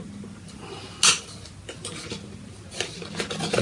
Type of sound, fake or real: real